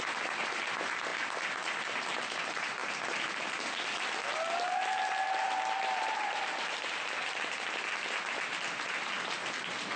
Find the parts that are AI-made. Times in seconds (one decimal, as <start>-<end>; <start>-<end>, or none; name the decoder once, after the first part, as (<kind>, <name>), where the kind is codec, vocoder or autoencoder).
0.0-1.1 (vocoder, BigVGAN v2); 1.8-2.8; 5.7-10.0